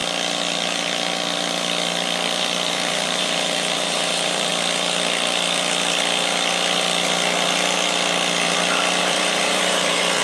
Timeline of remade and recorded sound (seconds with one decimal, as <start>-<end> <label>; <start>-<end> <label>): 0.0-2.7 recorded; 2.7-4.5 remade; 4.5-9.0 recorded; 9.0-10.2 remade